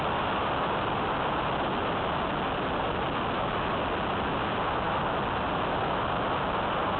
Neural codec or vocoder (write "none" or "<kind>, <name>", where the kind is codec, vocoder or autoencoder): none